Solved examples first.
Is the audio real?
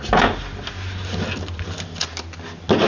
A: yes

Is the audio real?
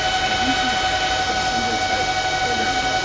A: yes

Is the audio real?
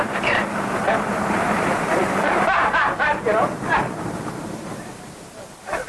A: no